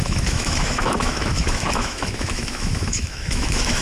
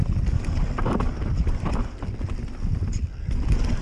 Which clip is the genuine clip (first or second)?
second